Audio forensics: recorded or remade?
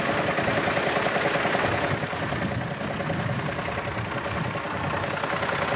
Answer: recorded